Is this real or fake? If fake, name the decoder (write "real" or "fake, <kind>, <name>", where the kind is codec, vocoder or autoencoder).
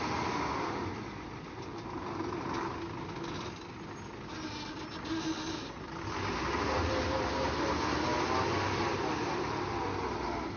real